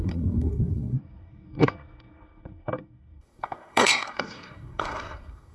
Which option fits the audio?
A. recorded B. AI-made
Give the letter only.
B